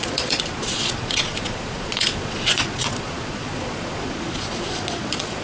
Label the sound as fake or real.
fake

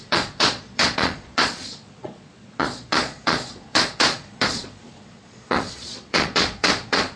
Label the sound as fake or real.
fake